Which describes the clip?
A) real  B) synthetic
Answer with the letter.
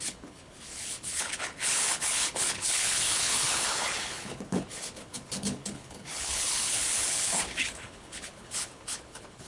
B